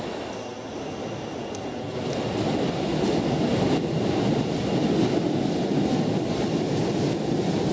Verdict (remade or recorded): recorded